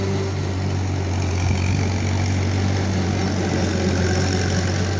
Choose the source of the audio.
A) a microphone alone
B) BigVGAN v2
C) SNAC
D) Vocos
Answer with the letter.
A